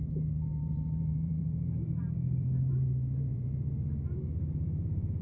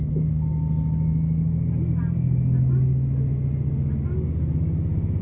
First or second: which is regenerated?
first